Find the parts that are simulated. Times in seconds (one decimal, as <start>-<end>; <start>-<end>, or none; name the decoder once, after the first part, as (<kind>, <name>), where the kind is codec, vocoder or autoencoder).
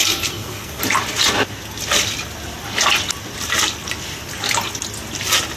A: 0.0-0.8 (codec, SNAC)